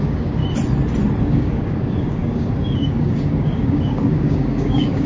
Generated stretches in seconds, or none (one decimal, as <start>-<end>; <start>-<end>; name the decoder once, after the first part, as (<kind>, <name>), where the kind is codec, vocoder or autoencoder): 0.0-0.4 (codec, DAC); 1.2-5.1